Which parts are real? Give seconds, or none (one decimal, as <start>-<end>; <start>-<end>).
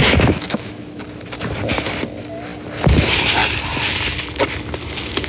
1.0-5.3